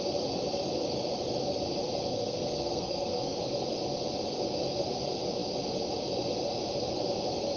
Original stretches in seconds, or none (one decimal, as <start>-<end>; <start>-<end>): 0.0-2.1; 3.4-7.6